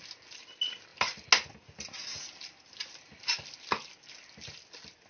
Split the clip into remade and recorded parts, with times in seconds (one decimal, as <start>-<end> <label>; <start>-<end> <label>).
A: 0.0-5.1 recorded